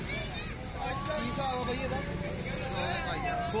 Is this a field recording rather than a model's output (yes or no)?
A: yes